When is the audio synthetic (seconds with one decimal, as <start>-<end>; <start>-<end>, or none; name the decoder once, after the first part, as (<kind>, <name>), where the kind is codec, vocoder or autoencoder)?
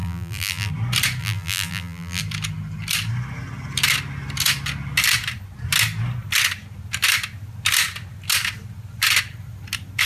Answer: 0.0-0.7 (vocoder, BigVGAN v2); 1.2-2.2